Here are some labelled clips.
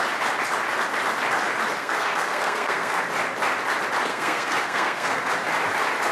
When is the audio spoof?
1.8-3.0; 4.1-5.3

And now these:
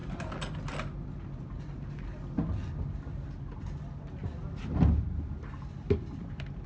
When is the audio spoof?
none

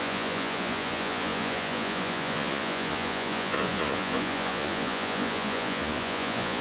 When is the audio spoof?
0.0-6.6

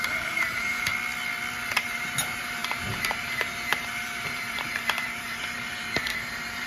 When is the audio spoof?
0.0-0.9; 1.8-6.7

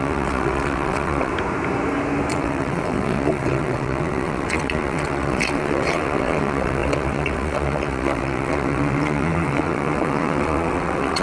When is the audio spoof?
0.0-1.3; 2.3-11.2

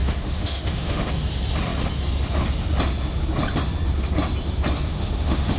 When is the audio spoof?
0.0-1.0; 4.9-5.6

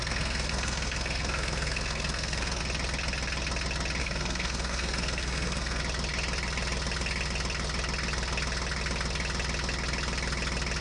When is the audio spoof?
0.0-2.6; 4.0-5.8